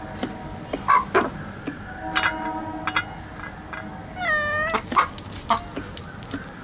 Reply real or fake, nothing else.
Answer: real